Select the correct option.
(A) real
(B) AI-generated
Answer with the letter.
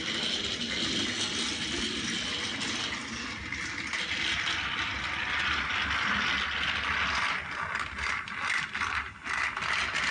A